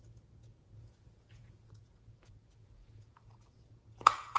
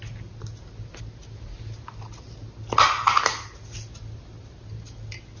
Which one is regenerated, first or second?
first